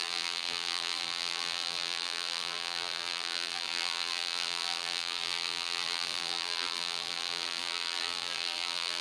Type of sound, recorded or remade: remade